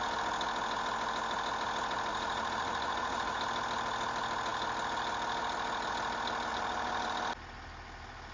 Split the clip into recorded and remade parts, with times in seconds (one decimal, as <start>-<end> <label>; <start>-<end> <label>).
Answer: 0.0-2.1 recorded; 2.1-3.4 remade; 3.4-8.3 recorded